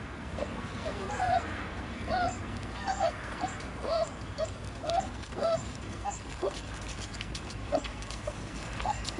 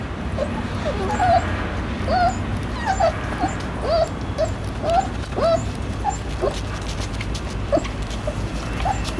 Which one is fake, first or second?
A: first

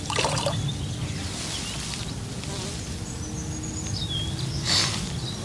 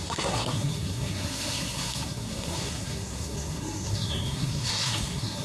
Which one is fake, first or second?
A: second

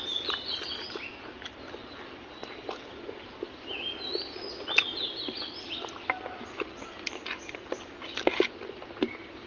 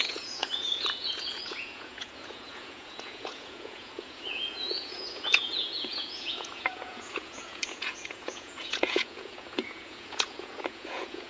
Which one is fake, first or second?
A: second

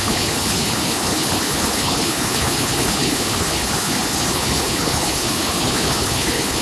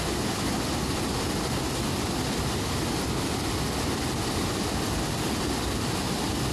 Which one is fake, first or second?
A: first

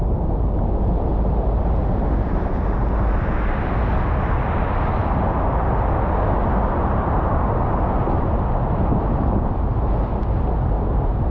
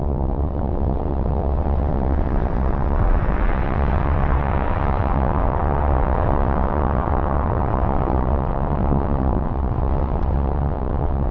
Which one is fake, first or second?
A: second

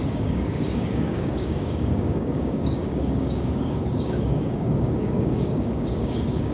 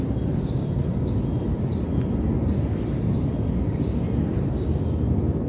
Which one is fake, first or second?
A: first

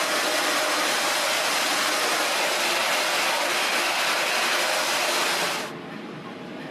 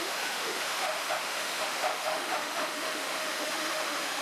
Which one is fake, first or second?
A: second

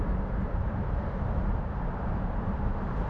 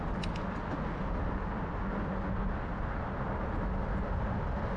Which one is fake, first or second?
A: first